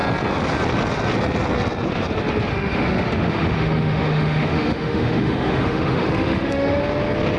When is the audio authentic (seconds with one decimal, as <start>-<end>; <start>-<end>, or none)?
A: 0.0-2.5; 6.8-7.4